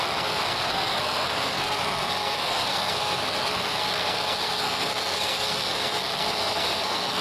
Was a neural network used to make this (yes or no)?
yes